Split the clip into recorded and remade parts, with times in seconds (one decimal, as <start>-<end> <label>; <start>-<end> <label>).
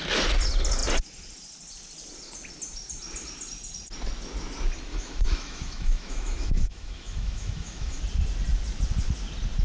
0.0-4.9 recorded; 4.9-8.0 remade; 8.0-9.6 recorded